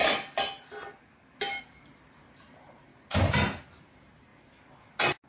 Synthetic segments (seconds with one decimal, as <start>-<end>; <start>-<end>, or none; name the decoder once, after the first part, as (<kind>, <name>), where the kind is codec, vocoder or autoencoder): 1.6-2.9 (vocoder, BigVGAN v2); 3.8-4.3